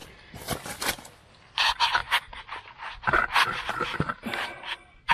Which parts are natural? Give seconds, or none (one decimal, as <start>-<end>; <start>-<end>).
0.0-5.1